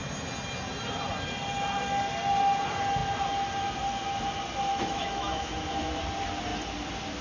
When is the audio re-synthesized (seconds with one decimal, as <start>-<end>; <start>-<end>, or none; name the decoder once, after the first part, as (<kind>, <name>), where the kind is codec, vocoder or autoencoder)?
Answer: 4.7-5.9 (autoencoder, DAC-VAE)